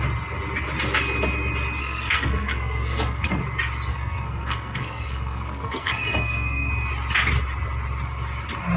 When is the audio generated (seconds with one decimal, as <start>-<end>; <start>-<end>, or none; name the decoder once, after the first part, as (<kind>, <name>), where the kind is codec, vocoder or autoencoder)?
1.8-3.4 (codec, SNAC); 3.9-6.7